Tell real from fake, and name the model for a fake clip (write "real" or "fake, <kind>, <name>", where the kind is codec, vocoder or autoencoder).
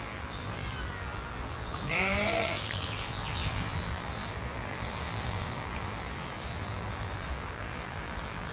fake, vocoder, BigVGAN v2